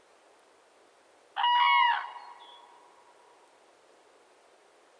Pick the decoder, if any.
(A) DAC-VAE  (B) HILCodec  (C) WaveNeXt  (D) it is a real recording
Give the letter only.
D